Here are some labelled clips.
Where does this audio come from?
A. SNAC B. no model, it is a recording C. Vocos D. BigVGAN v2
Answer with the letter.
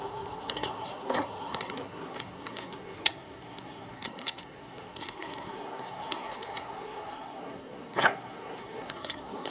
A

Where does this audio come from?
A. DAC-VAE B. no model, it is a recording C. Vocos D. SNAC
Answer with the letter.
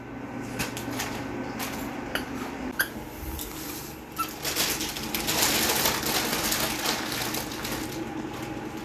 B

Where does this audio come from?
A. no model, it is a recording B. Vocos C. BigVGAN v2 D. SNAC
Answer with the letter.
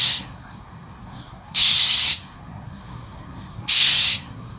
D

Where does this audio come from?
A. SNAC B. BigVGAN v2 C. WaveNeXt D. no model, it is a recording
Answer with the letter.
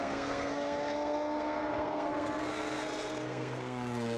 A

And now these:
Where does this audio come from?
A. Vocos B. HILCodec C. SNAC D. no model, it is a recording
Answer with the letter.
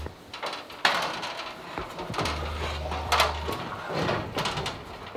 D